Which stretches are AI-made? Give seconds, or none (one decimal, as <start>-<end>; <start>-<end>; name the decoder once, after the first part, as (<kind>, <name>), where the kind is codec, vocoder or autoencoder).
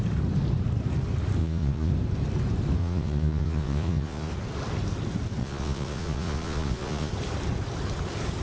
1.4-1.9 (vocoder, Vocos); 2.8-4.3; 5.4-7.1